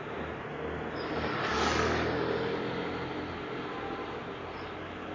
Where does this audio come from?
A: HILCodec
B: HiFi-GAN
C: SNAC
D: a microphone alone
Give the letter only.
D